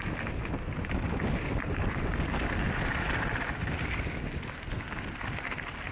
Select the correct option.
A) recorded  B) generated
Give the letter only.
A